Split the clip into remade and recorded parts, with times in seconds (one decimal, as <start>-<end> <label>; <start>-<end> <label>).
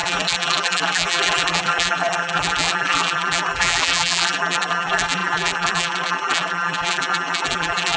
0.0-8.0 remade